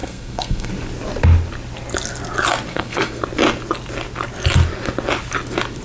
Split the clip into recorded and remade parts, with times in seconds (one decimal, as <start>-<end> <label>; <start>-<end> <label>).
0.0-0.7 remade; 0.7-2.7 recorded; 2.7-3.2 remade; 3.2-5.8 recorded